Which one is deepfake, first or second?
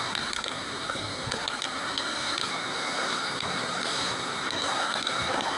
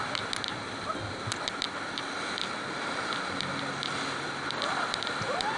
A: first